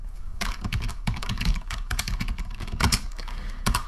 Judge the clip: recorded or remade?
remade